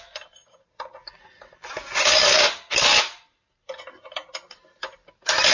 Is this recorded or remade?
recorded